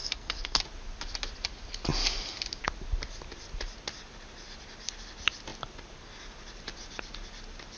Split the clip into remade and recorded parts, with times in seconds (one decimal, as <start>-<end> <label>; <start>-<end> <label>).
0.0-0.6 remade; 0.6-7.8 recorded